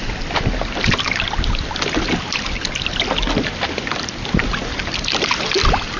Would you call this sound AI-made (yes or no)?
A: no